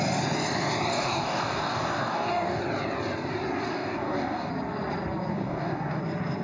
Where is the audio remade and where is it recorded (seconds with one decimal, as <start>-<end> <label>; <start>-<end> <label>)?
0.0-0.9 recorded; 0.9-2.6 remade; 2.6-3.7 recorded; 3.7-4.5 remade; 4.5-5.3 recorded; 5.3-6.0 remade; 6.0-6.4 recorded